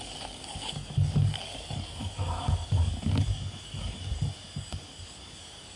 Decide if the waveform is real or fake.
fake